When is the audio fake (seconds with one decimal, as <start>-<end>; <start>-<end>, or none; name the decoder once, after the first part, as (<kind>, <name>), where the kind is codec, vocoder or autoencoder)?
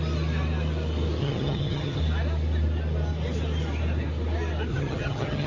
1.2-2.0 (vocoder, HiFi-GAN); 4.7-5.5